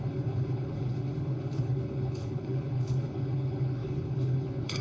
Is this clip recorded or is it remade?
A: remade